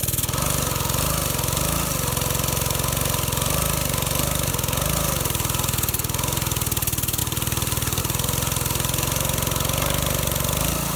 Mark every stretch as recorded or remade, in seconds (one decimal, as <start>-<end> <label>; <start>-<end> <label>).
0.0-7.2 recorded; 7.2-8.0 remade; 8.0-11.0 recorded